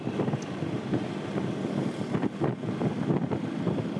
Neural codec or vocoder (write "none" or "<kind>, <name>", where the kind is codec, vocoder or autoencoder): none